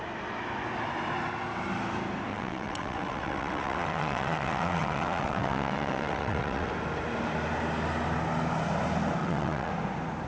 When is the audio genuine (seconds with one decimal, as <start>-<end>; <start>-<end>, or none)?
0.0-2.3; 6.7-9.2; 9.7-10.3